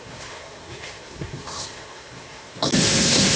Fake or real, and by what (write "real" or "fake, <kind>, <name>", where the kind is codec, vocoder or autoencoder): fake, codec, SNAC